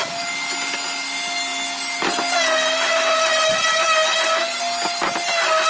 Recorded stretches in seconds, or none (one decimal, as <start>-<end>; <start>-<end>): 0.0-5.7